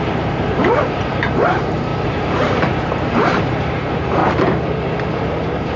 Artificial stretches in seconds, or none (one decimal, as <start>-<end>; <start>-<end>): 0.0-4.2; 5.1-5.8